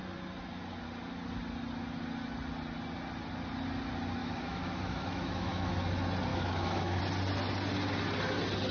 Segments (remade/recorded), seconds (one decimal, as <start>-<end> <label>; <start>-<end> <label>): 0.0-4.2 recorded; 4.2-5.7 remade; 5.7-6.3 recorded; 6.3-7.0 remade; 7.0-8.7 recorded